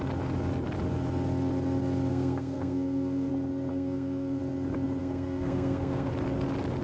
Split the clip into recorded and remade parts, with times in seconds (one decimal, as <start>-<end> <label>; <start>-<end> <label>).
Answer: 0.0-2.1 recorded; 2.1-3.3 remade; 3.3-3.7 recorded; 3.7-4.4 remade; 4.4-5.0 recorded; 5.0-6.1 remade; 6.1-6.8 recorded